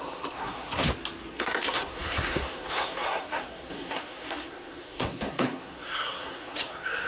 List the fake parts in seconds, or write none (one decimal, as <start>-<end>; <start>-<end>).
0.0-0.8; 1.3-7.1